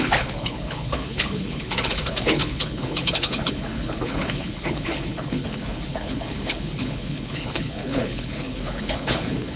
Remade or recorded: remade